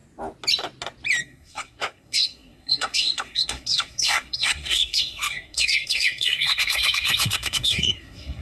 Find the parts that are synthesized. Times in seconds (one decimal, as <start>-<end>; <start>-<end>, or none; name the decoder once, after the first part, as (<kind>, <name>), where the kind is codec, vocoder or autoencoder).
1.2-8.4 (codec, SNAC)